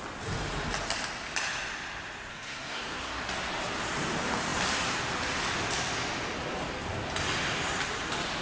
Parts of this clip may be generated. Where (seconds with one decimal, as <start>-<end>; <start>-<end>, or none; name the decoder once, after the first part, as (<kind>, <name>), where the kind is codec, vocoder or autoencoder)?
2.3-3.2 (codec, SNAC)